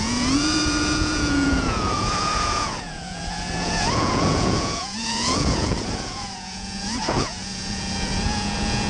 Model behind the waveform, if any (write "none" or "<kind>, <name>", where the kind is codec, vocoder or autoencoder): vocoder, Vocos